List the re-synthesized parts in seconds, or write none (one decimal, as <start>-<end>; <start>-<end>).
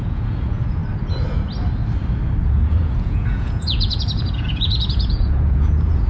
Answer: 0.0-0.8; 2.4-6.1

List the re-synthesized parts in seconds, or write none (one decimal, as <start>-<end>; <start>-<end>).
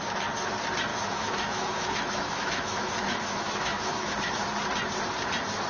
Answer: 0.9-4.3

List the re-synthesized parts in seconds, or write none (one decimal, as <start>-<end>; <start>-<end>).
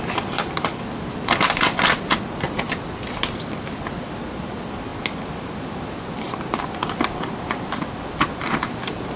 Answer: none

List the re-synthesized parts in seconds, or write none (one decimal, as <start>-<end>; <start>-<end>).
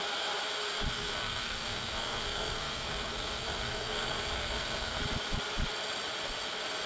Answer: 0.9-5.0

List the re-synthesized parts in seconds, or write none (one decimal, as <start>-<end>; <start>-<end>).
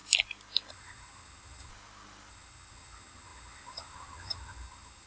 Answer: 0.7-1.7; 2.3-5.1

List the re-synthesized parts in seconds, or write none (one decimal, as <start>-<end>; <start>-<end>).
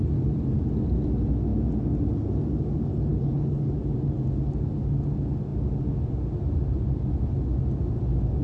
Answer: 3.1-3.7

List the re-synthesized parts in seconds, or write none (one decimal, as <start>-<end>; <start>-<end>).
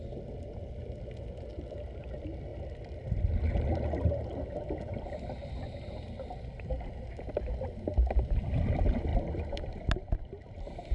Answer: none